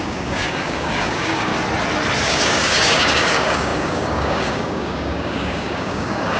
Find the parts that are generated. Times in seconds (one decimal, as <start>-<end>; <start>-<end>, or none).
0.0-1.5; 2.2-6.4